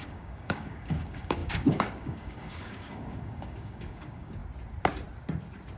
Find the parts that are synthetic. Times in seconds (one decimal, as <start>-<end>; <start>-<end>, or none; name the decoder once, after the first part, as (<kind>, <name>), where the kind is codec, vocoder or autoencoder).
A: 0.0-4.4 (codec, DAC)

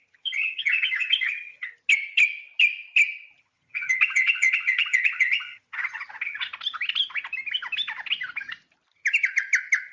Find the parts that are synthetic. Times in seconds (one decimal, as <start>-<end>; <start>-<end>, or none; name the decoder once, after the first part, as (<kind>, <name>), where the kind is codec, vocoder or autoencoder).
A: 0.0-1.7 (vocoder, HiFi-GAN); 3.4-6.5

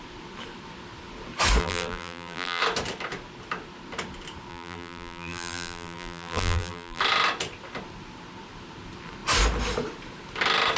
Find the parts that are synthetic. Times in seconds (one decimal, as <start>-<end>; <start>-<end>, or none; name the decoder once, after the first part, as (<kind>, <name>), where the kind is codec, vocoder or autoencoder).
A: 1.6-2.6 (vocoder, BigVGAN v2); 4.5-7.0

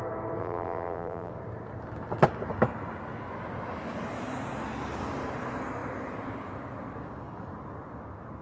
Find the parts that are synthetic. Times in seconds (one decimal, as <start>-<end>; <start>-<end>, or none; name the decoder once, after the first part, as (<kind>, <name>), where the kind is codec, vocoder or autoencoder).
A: 0.4-1.3 (vocoder, BigVGAN v2)

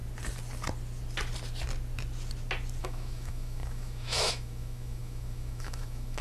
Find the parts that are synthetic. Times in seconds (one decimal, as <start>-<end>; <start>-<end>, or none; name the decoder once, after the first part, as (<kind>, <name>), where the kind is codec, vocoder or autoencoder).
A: 2.8-6.2 (autoencoder, DAC-VAE)

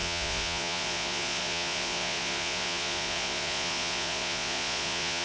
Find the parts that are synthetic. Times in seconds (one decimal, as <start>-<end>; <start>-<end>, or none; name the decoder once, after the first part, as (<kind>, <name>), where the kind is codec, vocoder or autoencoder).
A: 0.0-5.2 (vocoder, Vocos)

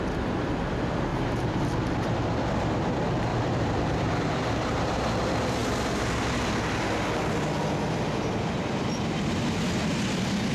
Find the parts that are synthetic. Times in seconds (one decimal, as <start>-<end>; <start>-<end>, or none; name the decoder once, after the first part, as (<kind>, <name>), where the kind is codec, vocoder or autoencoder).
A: 1.1-1.6 (vocoder, BigVGAN v2); 3.3-5.0

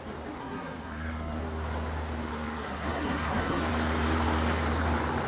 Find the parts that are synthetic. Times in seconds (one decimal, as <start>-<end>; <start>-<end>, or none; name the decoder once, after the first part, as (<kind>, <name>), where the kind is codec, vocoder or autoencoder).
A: 0.4-1.4 (codec, SNAC); 2.3-3.7